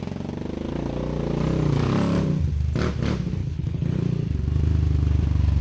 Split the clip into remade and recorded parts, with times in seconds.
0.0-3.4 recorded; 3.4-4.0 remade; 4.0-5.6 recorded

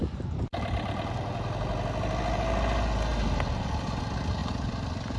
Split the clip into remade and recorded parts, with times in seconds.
0.0-5.2 recorded